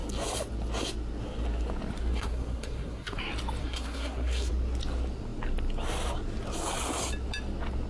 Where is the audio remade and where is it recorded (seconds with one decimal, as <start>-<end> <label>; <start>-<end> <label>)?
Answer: 0.0-2.1 recorded; 2.1-3.2 remade; 3.2-3.6 recorded; 3.6-4.5 remade; 4.5-7.9 recorded